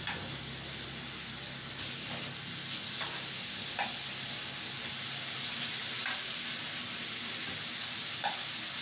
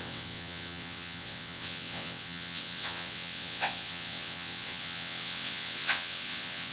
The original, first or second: first